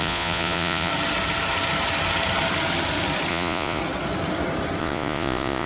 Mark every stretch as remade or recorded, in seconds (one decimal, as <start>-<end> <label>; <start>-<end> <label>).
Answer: 0.0-0.9 remade; 0.9-3.3 recorded; 3.3-3.8 remade; 3.8-4.8 recorded; 4.8-5.7 remade